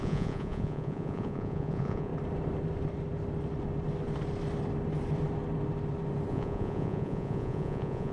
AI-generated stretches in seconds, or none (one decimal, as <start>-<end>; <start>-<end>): 0.0-2.1; 6.3-8.1